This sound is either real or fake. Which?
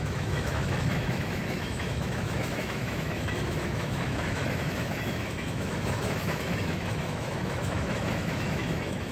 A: fake